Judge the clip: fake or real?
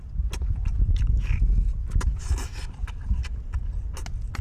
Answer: real